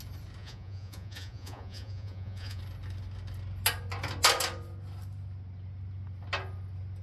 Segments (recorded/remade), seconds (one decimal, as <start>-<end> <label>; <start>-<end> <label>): 0.0-0.4 recorded; 0.4-2.6 remade; 2.6-7.0 recorded